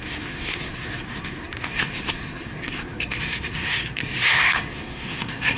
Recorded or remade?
remade